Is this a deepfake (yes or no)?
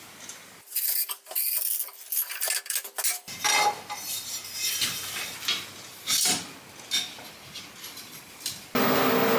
no